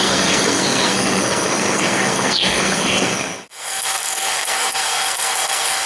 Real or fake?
fake